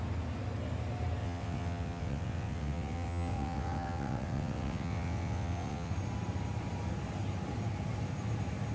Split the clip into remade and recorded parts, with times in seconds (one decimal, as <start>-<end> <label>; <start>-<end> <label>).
0.0-1.2 recorded; 1.2-5.9 remade; 5.9-8.7 recorded